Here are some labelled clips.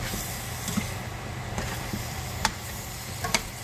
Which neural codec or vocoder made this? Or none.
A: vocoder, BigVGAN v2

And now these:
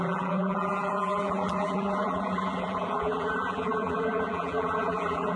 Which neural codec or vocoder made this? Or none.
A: vocoder, BigVGAN v2